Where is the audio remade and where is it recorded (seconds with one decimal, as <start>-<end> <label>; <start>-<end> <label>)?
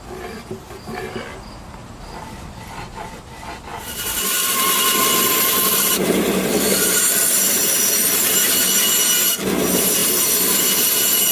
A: 0.0-1.8 recorded; 1.8-3.1 remade; 3.1-3.7 recorded; 3.7-8.5 remade; 8.5-10.0 recorded; 10.0-10.6 remade; 10.6-11.3 recorded